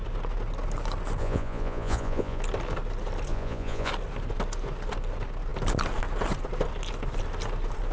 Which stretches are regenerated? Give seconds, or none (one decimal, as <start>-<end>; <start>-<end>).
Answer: 1.2-2.4; 3.3-3.9